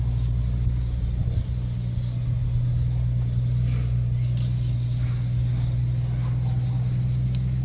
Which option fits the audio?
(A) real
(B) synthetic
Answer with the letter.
A